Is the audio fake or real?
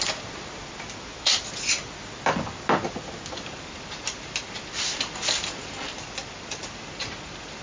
real